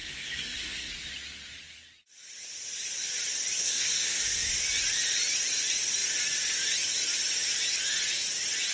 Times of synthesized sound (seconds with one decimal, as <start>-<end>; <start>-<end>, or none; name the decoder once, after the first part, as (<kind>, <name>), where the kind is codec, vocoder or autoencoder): 0.0-0.9 (codec, SNAC); 3.6-4.2